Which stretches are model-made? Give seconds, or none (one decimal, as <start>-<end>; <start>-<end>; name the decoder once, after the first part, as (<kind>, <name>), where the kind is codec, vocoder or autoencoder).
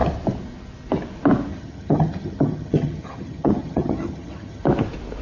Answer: 1.5-4.6 (vocoder, HiFi-GAN)